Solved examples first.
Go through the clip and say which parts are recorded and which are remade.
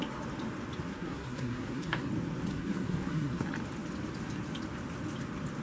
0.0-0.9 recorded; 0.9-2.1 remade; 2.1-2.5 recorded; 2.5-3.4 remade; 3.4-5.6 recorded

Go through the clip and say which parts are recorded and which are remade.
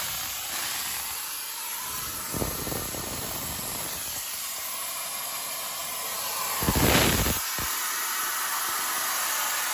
0.0-9.7 recorded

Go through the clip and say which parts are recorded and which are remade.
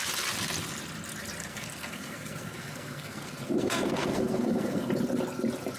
0.0-1.4 recorded; 1.4-4.9 remade; 4.9-5.8 recorded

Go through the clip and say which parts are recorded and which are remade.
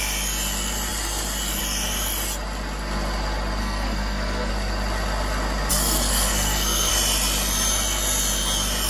0.0-3.6 recorded; 3.6-4.5 remade; 4.5-5.7 recorded; 5.7-6.9 remade; 6.9-8.9 recorded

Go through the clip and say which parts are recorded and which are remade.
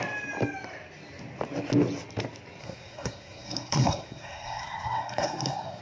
0.0-2.6 recorded; 2.6-5.8 remade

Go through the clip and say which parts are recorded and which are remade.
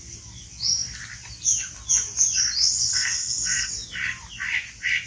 0.0-2.9 recorded; 2.9-3.7 remade; 3.7-5.1 recorded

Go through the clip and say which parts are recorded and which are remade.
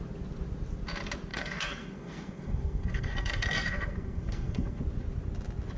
0.0-1.3 recorded; 1.3-4.8 remade; 4.8-5.8 recorded